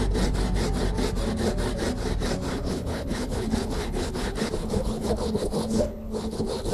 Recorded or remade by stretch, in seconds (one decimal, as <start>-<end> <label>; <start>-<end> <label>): 0.0-2.5 recorded; 2.5-6.7 remade